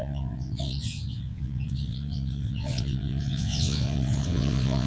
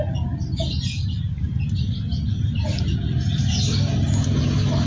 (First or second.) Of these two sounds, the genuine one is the second